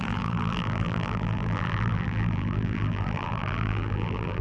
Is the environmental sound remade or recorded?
remade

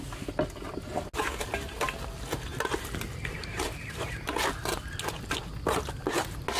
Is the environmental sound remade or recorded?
recorded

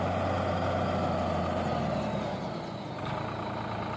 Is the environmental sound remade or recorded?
recorded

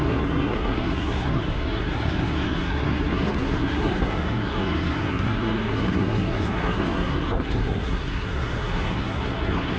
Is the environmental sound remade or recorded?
remade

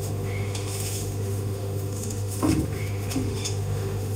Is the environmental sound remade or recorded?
remade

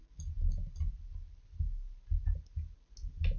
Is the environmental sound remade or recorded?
recorded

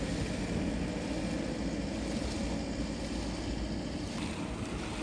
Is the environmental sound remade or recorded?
recorded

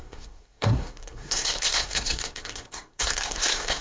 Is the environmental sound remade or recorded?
remade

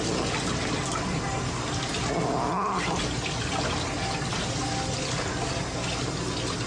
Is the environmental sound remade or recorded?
recorded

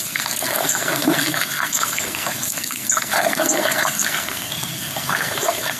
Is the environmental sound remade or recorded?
remade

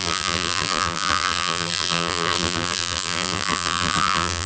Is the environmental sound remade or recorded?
remade